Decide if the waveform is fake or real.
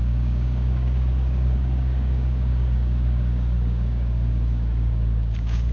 fake